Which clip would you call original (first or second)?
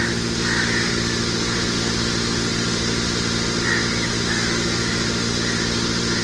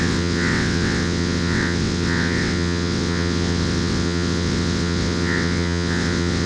first